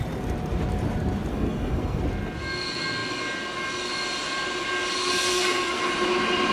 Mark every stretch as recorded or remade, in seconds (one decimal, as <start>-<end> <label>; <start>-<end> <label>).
0.0-1.3 recorded; 1.3-2.0 remade; 2.0-5.0 recorded; 5.0-5.9 remade; 5.9-6.5 recorded